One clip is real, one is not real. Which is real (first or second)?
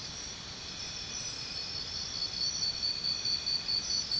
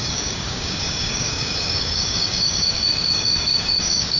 first